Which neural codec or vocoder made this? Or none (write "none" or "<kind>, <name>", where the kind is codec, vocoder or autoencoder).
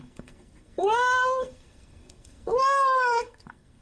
codec, SNAC